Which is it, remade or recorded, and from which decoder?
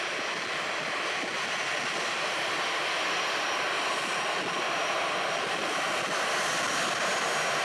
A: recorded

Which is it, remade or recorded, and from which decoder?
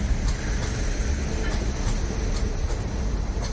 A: recorded